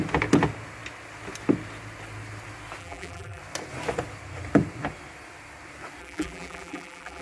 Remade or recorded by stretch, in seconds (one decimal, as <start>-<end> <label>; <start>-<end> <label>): 0.0-2.8 recorded; 2.8-3.4 remade; 3.4-6.0 recorded; 6.0-7.2 remade